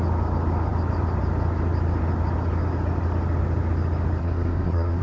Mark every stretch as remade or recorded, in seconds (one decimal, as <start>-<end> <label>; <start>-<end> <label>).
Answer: 0.0-4.2 recorded; 4.2-5.0 remade